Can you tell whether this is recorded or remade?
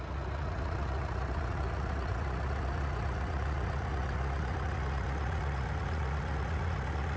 remade